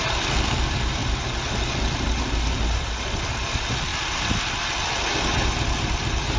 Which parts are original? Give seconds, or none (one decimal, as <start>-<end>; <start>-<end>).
0.0-6.4